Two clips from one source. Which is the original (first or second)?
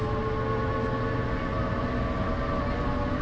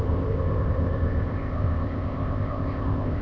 first